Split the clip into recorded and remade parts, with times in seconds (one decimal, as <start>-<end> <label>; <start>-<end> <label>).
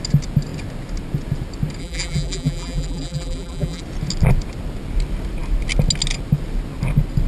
0.0-1.8 recorded; 1.8-3.8 remade; 3.8-7.3 recorded